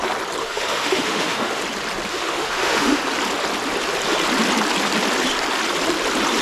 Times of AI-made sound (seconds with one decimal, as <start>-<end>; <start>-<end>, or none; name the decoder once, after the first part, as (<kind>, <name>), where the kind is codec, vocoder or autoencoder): 0.4-1.6 (autoencoder, DAC-VAE); 2.1-3.0